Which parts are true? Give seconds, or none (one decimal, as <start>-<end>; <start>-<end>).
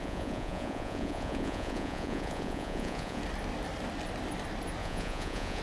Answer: 3.2-4.8